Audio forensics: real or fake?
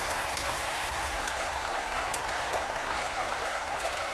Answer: fake